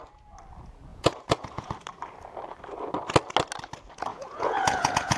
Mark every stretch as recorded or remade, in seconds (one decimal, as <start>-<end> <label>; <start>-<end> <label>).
0.0-0.9 recorded; 0.9-1.7 remade; 1.7-4.1 recorded; 4.1-5.2 remade